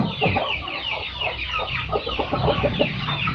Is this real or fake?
fake